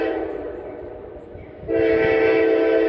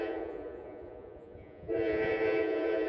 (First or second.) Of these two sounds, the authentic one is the first